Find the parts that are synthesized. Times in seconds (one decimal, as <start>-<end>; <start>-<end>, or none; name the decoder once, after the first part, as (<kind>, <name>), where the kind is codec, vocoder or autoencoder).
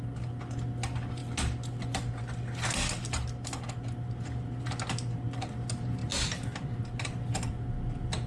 none